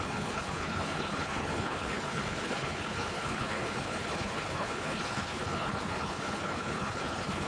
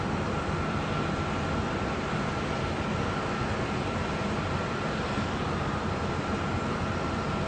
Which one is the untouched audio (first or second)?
second